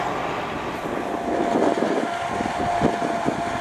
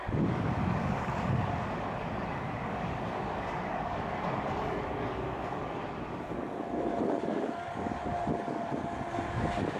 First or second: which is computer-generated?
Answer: second